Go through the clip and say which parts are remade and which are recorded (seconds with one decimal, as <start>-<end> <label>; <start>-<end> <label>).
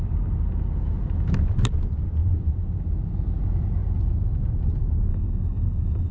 0.0-5.1 recorded; 5.1-6.1 remade